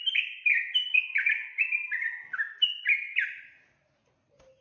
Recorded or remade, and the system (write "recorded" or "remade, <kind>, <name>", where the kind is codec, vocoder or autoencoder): recorded